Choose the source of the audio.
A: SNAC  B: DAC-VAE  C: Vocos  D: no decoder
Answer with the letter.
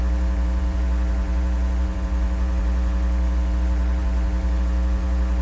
C